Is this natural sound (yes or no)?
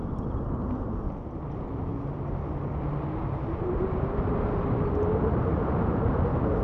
yes